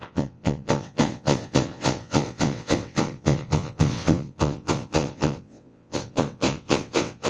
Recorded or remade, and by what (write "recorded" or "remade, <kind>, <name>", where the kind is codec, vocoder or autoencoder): remade, vocoder, WaveNeXt